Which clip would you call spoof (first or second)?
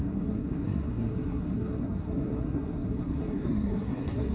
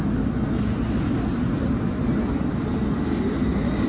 first